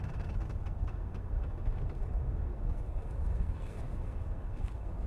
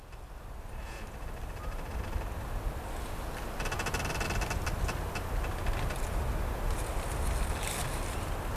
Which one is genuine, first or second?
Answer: second